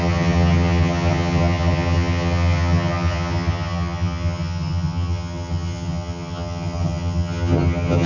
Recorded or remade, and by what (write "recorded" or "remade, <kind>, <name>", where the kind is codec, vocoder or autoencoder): remade, vocoder, HiFi-GAN